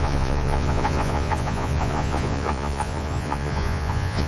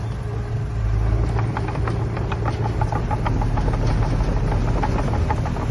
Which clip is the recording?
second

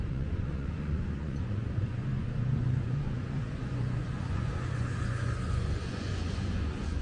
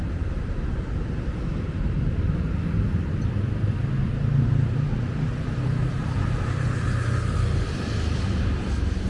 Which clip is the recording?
second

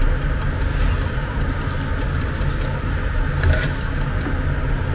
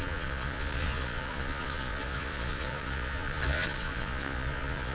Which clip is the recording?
first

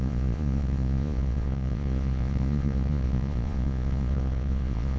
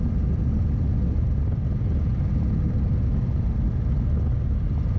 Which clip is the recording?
second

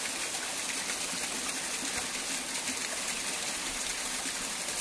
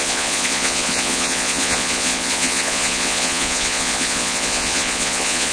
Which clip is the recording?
first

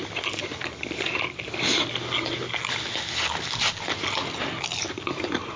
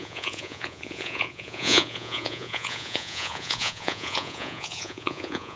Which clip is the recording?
first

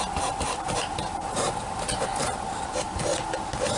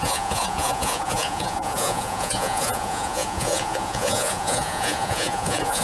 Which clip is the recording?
first